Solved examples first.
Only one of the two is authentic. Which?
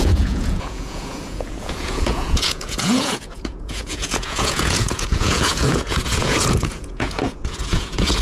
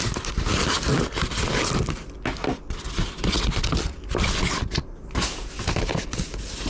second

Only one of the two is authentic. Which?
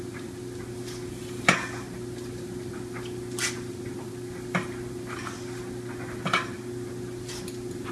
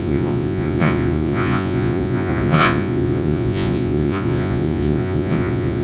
first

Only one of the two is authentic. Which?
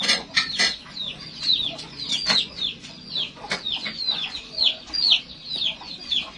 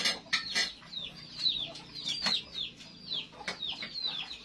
second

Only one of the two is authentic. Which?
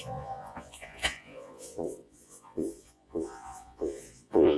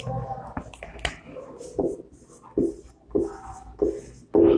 second